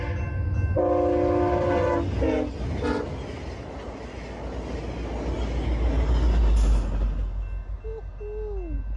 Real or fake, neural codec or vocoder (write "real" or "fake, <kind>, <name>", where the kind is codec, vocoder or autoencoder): real